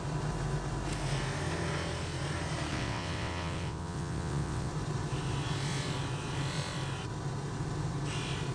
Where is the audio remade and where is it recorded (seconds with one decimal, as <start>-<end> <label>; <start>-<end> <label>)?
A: 0.0-2.7 recorded; 2.7-4.7 remade; 4.7-8.5 recorded